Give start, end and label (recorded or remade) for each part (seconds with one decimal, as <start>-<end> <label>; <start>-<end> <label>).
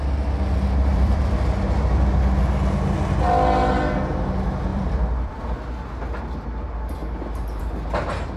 0.0-0.9 recorded; 0.9-1.9 remade; 1.9-4.7 recorded; 4.7-5.4 remade; 5.4-8.4 recorded